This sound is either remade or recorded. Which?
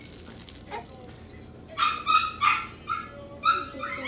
recorded